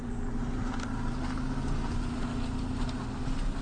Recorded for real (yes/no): yes